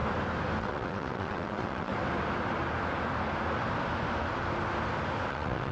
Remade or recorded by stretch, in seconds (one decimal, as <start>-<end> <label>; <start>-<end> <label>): 0.0-0.6 recorded; 0.6-1.9 remade; 1.9-5.3 recorded; 5.3-5.7 remade